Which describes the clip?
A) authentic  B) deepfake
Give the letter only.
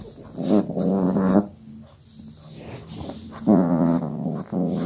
A